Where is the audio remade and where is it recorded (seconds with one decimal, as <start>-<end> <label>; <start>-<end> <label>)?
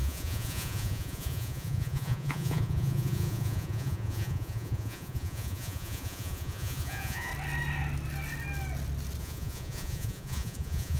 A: 0.0-7.3 remade; 7.3-9.2 recorded; 9.2-11.0 remade